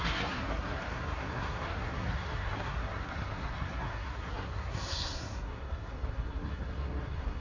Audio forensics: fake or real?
fake